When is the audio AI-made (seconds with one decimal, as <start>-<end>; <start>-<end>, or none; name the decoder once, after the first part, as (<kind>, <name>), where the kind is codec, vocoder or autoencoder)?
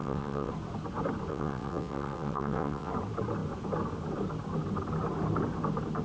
0.0-0.5 (vocoder, WaveNeXt); 1.3-2.9